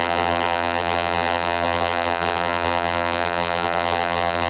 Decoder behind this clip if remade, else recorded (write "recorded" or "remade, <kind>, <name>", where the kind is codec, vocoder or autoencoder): remade, vocoder, BigVGAN v2